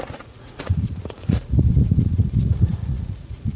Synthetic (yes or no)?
yes